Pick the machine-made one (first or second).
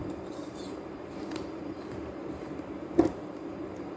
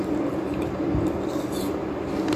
first